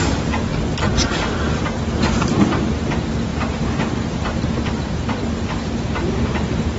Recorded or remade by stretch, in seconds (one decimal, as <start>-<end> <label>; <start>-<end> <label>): 0.0-6.8 recorded